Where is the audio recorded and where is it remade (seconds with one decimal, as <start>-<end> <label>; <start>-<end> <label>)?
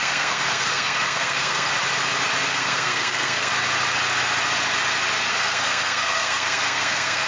0.0-1.7 remade; 1.7-2.5 recorded; 2.5-3.5 remade; 3.5-5.3 recorded; 5.3-7.3 remade